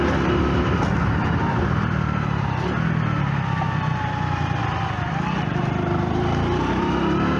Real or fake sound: real